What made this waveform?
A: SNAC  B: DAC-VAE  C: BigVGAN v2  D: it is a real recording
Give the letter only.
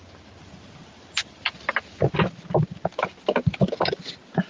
D